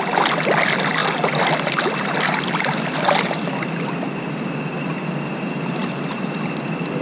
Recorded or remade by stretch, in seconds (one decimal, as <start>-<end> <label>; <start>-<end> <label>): 0.0-7.0 recorded